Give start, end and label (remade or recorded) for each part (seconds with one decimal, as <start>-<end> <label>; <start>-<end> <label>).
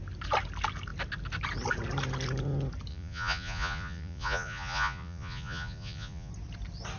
0.0-2.9 recorded; 2.9-6.3 remade; 6.3-7.0 recorded